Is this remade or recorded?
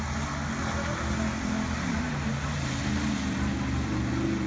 recorded